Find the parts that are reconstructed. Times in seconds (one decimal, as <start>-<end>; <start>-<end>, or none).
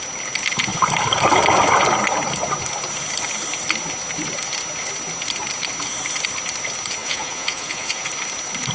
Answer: 7.0-8.1